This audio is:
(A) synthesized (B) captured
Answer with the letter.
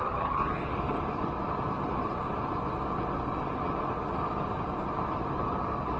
B